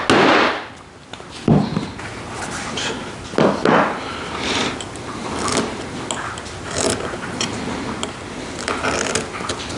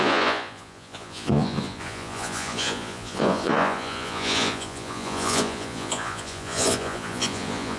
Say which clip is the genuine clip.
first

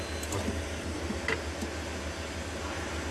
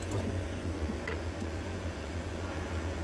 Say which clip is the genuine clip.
first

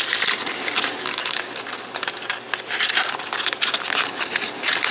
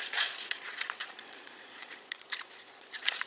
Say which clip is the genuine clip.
first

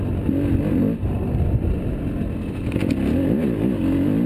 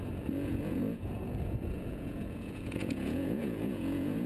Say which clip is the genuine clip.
first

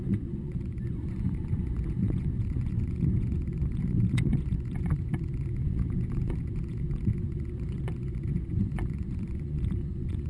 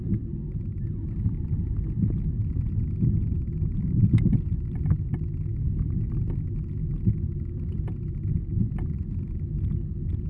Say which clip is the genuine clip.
second